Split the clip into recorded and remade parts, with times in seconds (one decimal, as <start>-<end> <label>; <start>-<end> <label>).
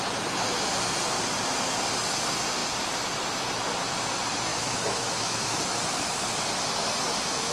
0.0-4.5 recorded; 4.5-6.2 remade; 6.2-7.5 recorded